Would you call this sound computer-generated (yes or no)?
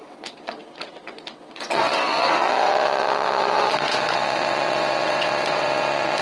yes